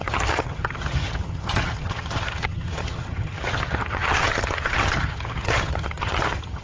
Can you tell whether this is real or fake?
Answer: fake